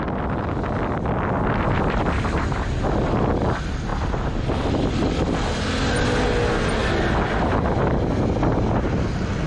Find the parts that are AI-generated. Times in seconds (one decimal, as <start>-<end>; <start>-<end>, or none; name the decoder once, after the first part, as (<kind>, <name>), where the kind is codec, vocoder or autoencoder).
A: none